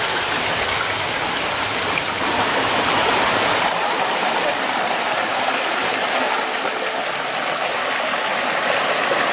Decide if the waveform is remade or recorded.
recorded